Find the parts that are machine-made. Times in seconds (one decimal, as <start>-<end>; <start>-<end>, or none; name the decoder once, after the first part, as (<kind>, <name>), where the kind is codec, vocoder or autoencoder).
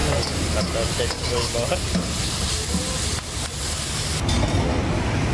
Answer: none